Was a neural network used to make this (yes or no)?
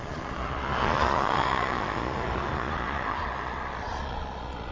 yes